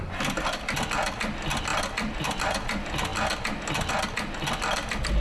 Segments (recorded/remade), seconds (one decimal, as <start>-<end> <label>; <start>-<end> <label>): 0.0-5.2 recorded